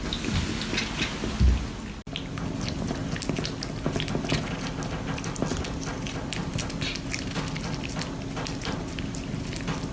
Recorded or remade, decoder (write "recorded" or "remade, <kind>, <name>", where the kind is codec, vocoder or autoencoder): recorded